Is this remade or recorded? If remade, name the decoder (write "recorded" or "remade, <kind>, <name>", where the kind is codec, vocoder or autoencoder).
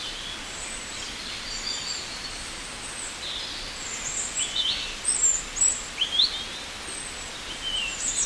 recorded